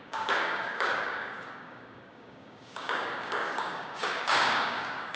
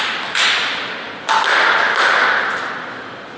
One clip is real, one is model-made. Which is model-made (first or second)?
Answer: first